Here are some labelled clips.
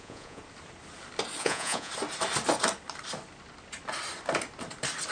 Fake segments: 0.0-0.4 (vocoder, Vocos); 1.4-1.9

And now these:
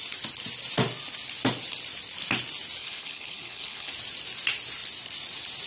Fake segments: 2.8-3.9 (codec, HILCodec)